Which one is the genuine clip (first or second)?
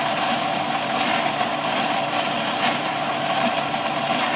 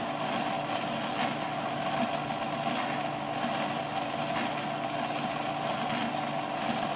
second